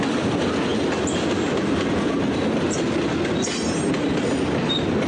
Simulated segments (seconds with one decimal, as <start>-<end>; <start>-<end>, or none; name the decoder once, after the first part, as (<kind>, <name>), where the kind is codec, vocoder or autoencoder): none